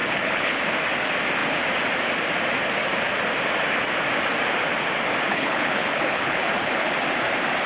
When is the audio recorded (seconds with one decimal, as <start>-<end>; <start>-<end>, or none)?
0.6-5.3; 6.9-7.7